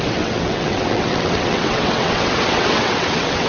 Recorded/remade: remade